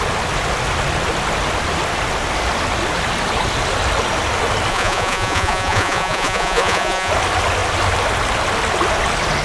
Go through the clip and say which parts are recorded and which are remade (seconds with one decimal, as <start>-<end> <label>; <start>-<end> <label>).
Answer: 0.0-4.7 recorded; 4.7-7.1 remade; 7.1-9.4 recorded